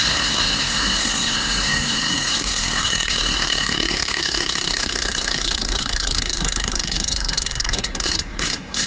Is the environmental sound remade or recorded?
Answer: remade